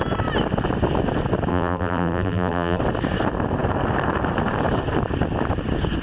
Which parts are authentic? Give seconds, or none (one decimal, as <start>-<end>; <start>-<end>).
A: 0.0-1.5; 2.8-6.0